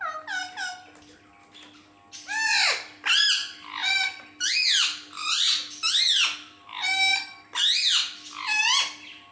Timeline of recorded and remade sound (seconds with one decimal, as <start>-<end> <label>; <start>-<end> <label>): 0.0-7.1 recorded; 7.1-7.6 remade; 7.6-9.3 recorded